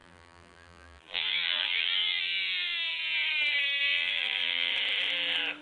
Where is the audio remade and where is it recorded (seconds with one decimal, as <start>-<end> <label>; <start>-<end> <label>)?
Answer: 0.0-2.9 remade; 2.9-3.8 recorded; 3.8-4.7 remade; 4.7-5.6 recorded